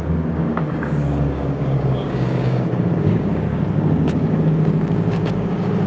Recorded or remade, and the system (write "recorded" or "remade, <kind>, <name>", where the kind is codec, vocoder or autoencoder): remade, codec, DAC